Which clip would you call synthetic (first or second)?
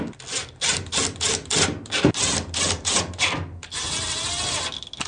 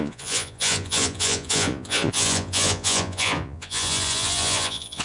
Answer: second